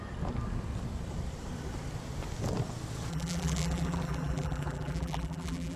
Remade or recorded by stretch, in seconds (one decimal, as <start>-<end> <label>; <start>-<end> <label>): 0.0-3.1 recorded; 3.1-5.8 remade